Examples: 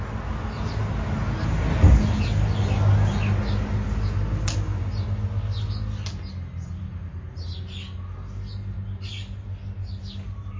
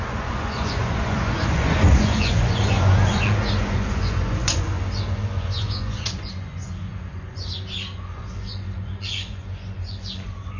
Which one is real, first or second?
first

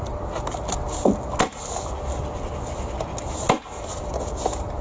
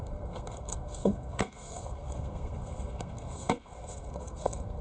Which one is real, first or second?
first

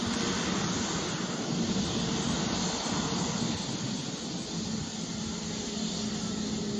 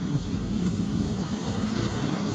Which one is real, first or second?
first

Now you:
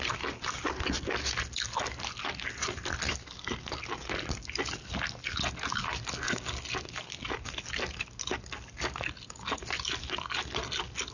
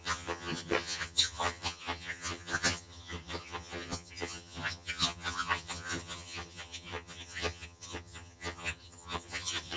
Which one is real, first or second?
first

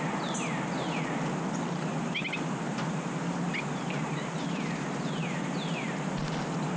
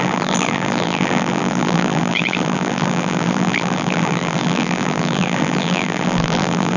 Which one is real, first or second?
first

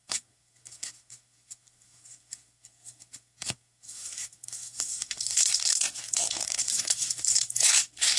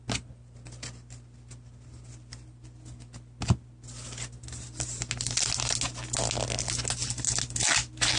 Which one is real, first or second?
second